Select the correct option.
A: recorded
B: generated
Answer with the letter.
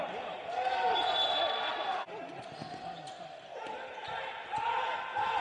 A